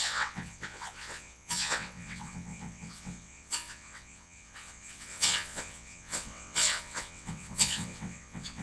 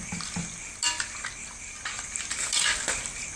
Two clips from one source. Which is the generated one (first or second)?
first